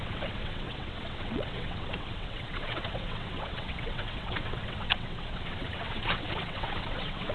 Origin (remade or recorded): remade